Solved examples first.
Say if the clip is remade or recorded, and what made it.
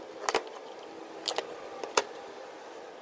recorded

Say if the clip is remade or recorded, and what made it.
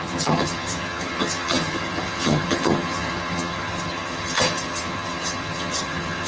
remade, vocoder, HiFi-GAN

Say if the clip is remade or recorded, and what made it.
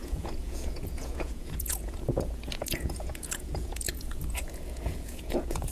remade, vocoder, Vocos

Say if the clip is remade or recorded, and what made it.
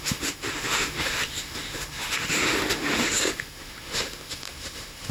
remade, autoencoder, DAC-VAE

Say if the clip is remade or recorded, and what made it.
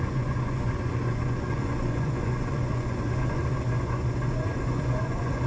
remade, vocoder, Vocos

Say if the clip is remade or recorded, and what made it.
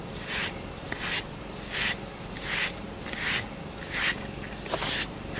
recorded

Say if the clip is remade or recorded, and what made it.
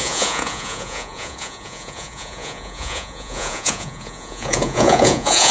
remade, vocoder, Vocos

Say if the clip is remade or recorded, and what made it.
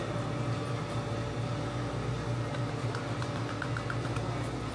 recorded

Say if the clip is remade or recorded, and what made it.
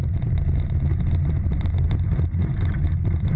remade, vocoder, BigVGAN v2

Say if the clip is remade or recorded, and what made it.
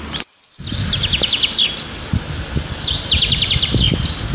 recorded